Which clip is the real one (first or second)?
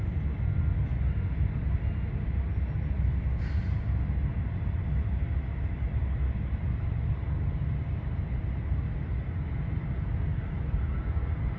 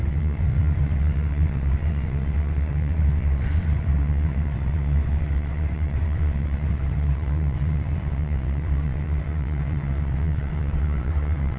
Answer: first